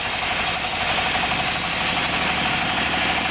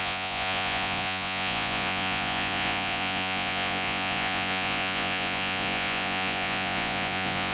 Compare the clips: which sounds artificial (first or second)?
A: second